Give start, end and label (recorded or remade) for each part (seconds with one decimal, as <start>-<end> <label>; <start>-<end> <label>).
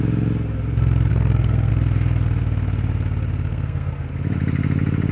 0.0-1.1 recorded; 1.1-1.7 remade; 1.7-3.5 recorded; 3.5-4.1 remade; 4.1-5.1 recorded